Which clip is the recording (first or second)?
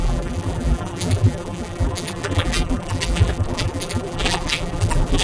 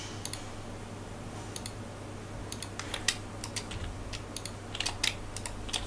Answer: second